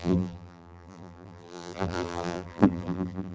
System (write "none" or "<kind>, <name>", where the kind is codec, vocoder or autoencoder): vocoder, BigVGAN v2